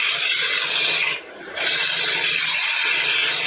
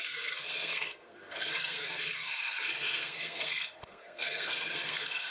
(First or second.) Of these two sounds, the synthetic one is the second